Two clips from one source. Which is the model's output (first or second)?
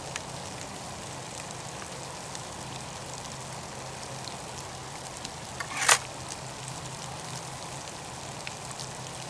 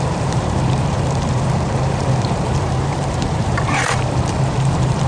second